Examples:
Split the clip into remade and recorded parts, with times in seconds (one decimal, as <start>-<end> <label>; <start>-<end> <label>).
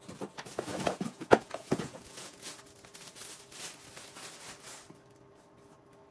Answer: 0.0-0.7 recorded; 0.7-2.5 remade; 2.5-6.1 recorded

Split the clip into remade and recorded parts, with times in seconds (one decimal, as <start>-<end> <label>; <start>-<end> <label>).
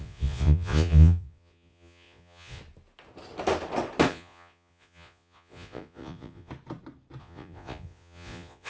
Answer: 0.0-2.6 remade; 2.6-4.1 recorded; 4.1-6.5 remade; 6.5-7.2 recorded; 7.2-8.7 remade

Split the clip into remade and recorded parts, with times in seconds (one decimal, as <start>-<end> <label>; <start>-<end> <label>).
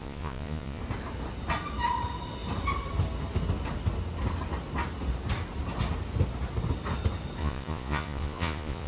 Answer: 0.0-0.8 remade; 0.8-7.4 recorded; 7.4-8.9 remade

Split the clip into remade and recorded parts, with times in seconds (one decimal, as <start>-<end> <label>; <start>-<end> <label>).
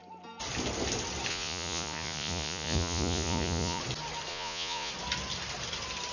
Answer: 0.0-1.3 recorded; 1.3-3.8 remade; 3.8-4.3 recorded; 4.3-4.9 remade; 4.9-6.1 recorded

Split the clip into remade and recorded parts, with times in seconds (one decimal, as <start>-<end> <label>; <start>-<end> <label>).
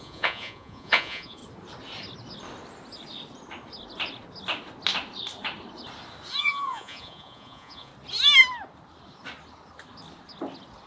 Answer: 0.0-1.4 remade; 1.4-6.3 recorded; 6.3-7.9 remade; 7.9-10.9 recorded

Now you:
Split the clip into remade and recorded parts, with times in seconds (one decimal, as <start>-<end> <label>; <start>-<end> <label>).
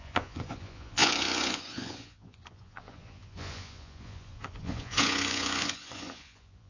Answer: 0.0-6.7 remade